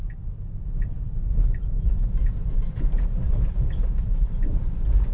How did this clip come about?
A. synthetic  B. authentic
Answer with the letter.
A